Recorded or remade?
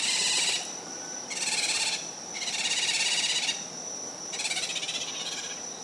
recorded